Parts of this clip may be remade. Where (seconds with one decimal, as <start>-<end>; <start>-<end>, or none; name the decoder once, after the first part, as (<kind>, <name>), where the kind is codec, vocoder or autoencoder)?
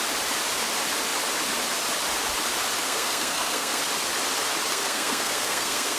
2.8-3.8 (codec, SNAC); 4.7-6.0